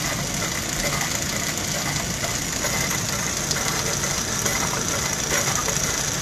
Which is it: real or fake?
real